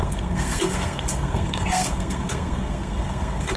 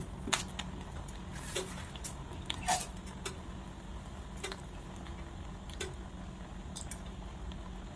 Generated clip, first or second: first